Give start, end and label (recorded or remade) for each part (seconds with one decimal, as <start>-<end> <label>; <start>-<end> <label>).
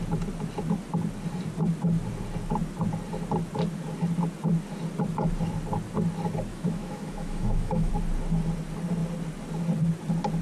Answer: 0.0-6.5 recorded; 6.5-7.9 remade; 7.9-10.4 recorded